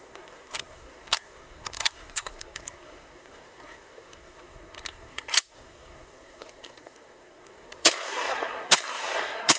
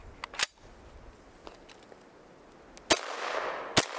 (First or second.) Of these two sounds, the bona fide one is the second